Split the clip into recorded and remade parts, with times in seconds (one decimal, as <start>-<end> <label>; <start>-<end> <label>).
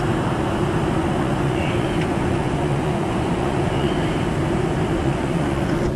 0.0-1.0 recorded; 1.0-3.9 remade; 3.9-5.0 recorded; 5.0-6.0 remade